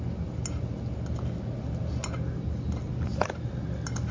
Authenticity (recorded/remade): recorded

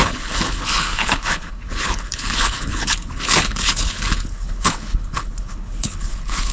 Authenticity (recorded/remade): remade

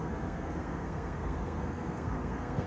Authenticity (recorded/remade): remade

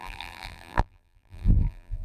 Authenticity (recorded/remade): remade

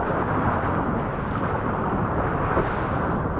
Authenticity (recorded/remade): recorded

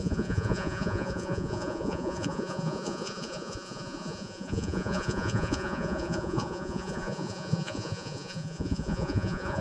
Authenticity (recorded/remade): remade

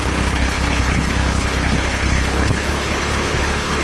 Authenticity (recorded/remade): remade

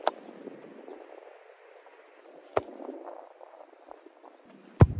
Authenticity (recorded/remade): recorded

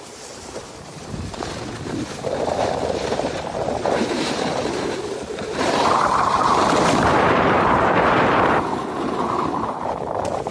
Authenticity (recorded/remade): remade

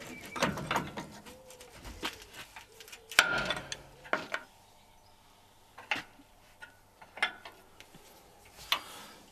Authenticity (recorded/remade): recorded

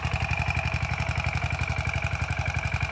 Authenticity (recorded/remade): remade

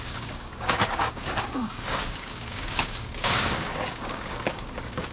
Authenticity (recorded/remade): remade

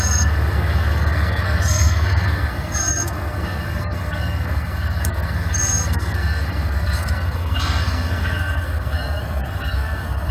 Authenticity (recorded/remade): remade